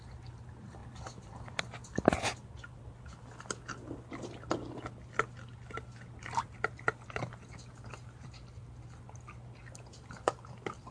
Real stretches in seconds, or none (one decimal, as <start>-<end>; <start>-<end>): 0.0-10.9